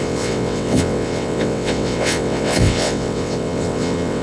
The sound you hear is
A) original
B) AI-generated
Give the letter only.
B